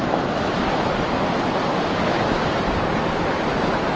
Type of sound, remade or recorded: recorded